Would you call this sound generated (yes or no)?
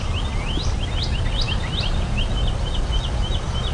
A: no